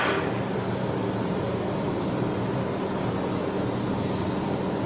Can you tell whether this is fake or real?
real